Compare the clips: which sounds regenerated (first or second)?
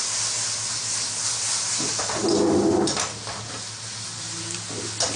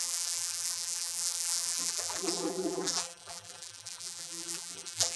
second